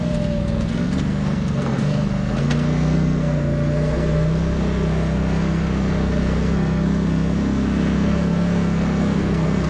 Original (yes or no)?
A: no